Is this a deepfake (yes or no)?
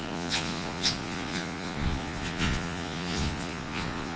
yes